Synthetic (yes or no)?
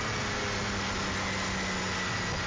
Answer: no